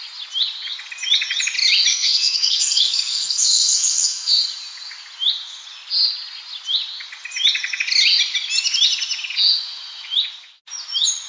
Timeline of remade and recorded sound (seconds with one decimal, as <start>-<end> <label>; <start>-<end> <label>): 0.0-1.9 recorded; 1.9-4.3 remade; 4.3-11.3 recorded

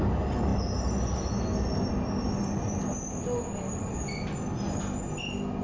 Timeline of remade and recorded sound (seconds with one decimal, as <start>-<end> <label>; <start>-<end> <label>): 0.0-5.6 recorded

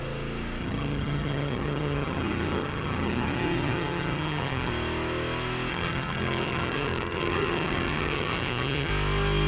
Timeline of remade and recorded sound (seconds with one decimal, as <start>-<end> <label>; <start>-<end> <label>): 0.0-0.6 recorded; 0.6-4.7 remade; 4.7-5.7 recorded; 5.7-8.9 remade; 8.9-9.5 recorded

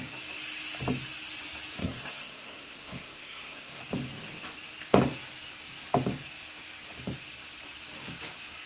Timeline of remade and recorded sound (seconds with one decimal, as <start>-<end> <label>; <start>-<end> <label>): 0.0-1.8 recorded; 1.8-3.8 remade; 3.8-8.7 recorded

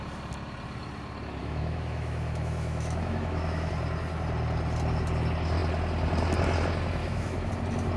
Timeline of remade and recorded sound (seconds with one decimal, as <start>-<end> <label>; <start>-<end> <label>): 0.0-1.4 recorded; 1.4-3.7 remade; 3.7-7.0 recorded; 7.0-7.5 remade; 7.5-8.0 recorded

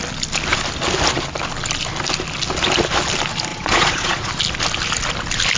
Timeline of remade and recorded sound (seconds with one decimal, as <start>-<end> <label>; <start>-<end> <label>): 0.0-3.5 recorded; 3.5-4.3 remade; 4.3-5.6 recorded